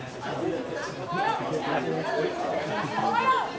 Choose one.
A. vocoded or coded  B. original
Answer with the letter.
B